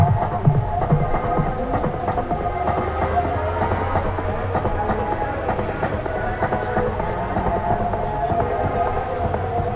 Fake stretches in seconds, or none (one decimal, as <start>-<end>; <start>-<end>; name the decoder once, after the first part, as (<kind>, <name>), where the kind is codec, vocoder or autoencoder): none